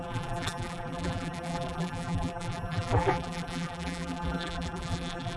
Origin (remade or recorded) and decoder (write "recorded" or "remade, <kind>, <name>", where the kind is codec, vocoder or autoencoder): remade, vocoder, BigVGAN v2